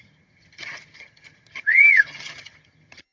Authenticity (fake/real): fake